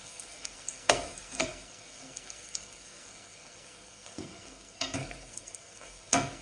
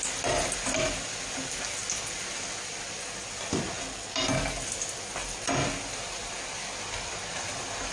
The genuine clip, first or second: second